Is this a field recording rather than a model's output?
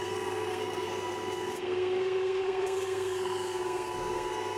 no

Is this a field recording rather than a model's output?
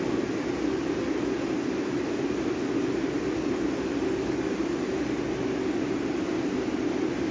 yes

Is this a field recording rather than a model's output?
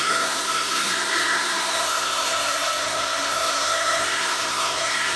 no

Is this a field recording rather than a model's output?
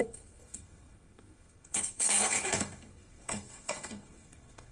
no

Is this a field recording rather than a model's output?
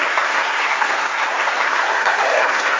no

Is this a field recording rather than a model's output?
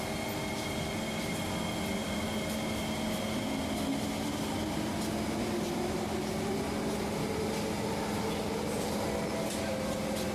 yes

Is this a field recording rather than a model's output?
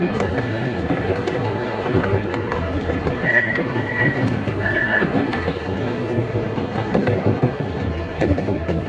no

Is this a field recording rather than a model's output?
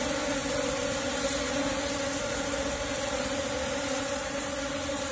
yes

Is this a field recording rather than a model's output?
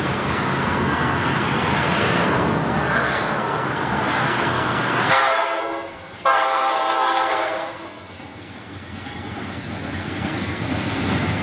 no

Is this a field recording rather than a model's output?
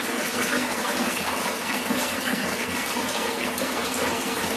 no